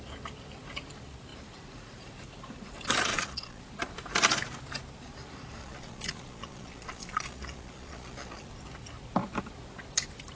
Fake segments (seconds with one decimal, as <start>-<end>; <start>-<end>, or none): 3.1-3.6; 5.6-8.5